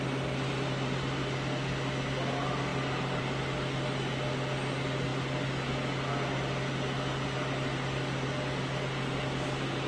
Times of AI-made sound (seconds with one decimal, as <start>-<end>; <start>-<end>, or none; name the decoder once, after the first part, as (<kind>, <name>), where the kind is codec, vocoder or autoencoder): none

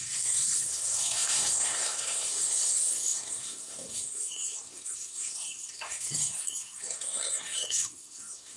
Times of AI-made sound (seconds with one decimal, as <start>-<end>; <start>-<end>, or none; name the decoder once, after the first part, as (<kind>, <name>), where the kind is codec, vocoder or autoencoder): 0.0-8.6 (codec, SNAC)

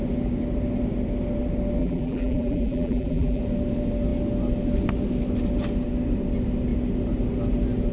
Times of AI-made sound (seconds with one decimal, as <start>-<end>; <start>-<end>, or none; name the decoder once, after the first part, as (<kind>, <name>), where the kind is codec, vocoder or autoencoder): 1.8-3.4 (vocoder, BigVGAN v2)